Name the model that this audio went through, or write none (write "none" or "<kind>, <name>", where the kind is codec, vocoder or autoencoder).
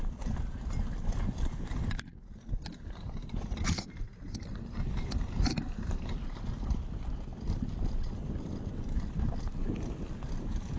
none